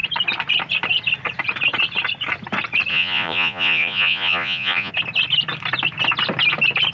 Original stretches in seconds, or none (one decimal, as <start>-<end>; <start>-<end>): 0.0-2.9; 4.9-6.9